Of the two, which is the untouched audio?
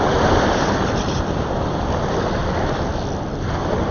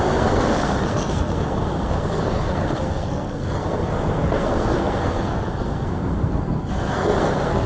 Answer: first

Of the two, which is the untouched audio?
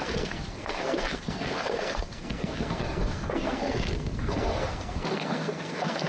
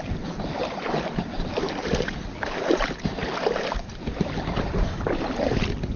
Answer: second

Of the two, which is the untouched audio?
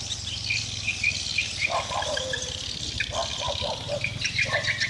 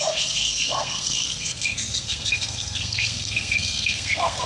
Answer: first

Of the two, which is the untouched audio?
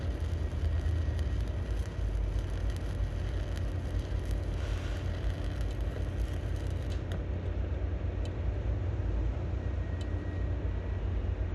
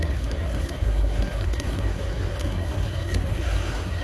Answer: first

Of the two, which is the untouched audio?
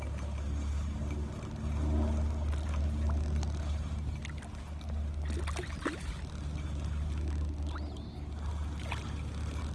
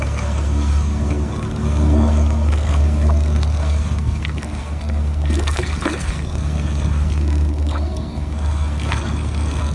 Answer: first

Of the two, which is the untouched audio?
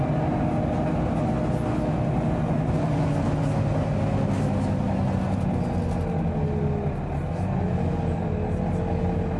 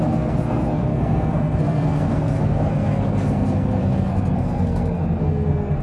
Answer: first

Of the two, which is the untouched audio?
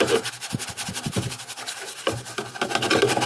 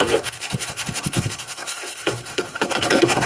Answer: first